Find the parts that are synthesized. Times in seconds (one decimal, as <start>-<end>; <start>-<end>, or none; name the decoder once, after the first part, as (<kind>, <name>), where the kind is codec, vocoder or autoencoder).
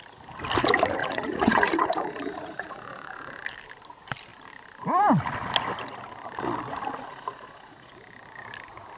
1.0-3.4 (vocoder, Vocos); 7.1-7.9